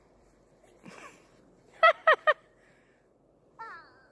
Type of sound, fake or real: fake